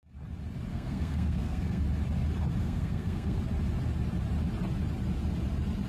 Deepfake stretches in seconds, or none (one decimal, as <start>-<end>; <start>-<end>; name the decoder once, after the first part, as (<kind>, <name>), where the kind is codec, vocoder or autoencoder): 0.7-1.8 (codec, SNAC); 2.6-3.4